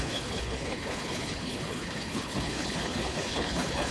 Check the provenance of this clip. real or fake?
fake